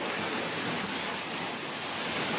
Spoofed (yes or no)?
no